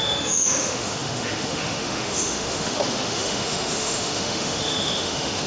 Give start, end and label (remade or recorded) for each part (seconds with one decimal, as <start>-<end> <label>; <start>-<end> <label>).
0.0-5.5 remade